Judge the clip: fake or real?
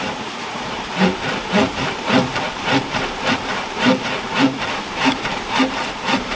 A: fake